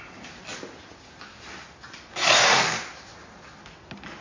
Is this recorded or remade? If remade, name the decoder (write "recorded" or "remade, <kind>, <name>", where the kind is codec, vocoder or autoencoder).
recorded